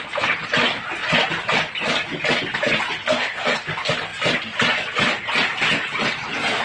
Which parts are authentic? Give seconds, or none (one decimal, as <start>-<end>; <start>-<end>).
0.0-3.1; 3.6-6.6